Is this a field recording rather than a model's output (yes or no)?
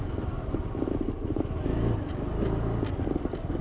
yes